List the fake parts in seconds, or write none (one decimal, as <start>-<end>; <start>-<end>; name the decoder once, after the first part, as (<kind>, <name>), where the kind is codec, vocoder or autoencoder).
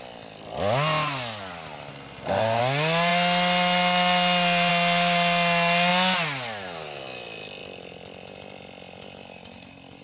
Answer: 1.9-2.6 (codec, SNAC)